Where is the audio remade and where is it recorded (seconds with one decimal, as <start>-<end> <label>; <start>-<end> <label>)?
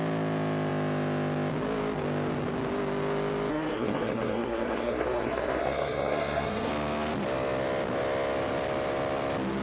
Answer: 0.0-3.5 recorded; 3.5-6.7 remade; 6.7-9.6 recorded